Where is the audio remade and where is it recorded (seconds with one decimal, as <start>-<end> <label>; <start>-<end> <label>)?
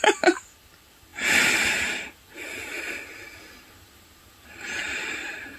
0.0-5.6 recorded